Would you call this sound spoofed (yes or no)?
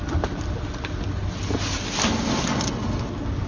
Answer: no